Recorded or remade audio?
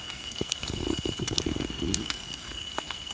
remade